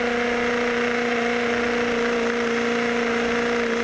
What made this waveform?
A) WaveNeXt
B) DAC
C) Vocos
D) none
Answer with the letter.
D